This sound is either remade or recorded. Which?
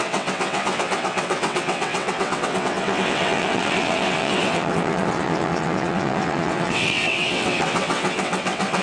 remade